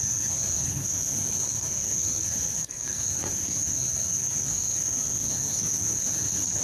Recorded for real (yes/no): no